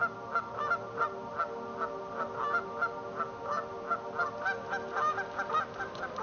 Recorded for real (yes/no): yes